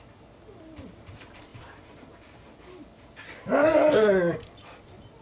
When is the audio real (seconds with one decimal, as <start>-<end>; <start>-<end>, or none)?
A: 0.0-5.2